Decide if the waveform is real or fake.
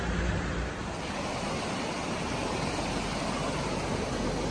real